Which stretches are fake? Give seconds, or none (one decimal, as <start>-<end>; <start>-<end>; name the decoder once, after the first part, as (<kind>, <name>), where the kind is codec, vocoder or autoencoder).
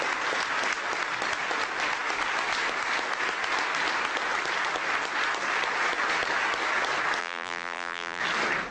7.2-8.2 (vocoder, BigVGAN v2)